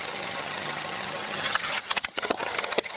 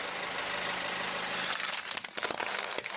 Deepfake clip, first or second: first